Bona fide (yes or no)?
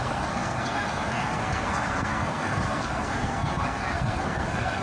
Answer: no